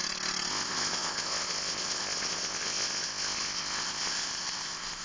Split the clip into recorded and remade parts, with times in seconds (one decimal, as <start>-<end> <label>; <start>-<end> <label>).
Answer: 0.0-0.5 recorded; 0.5-5.0 remade